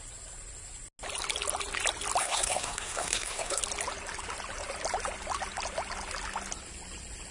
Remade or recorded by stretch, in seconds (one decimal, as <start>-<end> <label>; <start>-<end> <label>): 0.0-2.2 recorded; 2.2-3.6 remade; 3.6-7.3 recorded